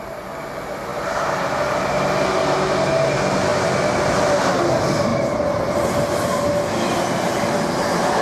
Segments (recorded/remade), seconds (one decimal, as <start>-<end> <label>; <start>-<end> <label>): 0.0-0.9 recorded; 0.9-2.1 remade; 2.1-8.2 recorded